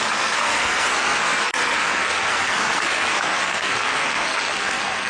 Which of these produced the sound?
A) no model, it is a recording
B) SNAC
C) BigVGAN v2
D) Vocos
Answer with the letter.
B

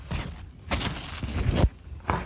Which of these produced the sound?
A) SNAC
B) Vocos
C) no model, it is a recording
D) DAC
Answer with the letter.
C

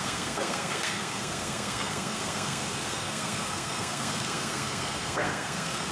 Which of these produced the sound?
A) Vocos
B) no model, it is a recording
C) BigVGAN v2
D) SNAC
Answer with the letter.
D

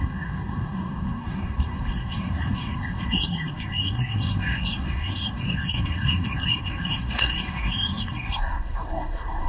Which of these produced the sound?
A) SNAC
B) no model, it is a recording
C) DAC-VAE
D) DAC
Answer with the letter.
A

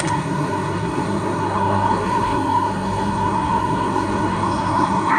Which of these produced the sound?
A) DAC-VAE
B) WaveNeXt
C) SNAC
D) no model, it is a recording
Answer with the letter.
C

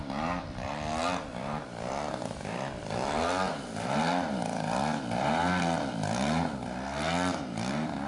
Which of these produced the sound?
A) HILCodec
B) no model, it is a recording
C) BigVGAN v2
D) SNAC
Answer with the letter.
B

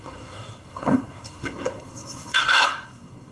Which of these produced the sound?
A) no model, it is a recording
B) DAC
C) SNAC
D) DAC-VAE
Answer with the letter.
C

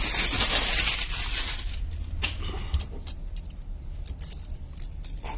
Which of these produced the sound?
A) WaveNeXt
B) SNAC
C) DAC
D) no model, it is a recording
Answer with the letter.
D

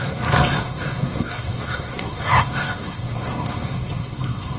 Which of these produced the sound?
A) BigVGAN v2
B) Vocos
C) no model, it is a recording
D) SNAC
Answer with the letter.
D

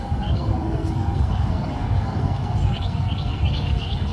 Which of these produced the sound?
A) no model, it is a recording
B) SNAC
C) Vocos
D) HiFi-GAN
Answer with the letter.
B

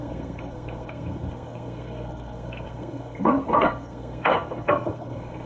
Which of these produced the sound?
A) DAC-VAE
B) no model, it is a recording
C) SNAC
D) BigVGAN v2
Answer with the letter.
C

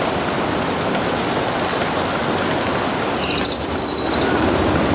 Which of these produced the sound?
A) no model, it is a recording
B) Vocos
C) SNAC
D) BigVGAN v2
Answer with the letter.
A